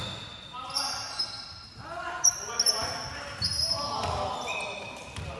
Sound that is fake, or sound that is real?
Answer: real